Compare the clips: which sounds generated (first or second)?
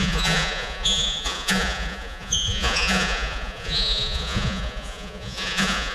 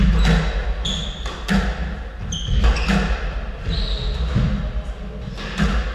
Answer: first